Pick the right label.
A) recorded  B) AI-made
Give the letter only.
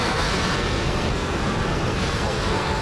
B